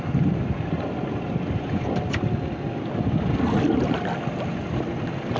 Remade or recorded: recorded